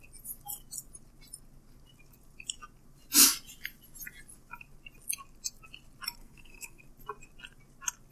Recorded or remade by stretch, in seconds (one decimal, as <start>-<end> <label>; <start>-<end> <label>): 0.0-6.2 recorded; 6.2-6.8 remade; 6.8-8.1 recorded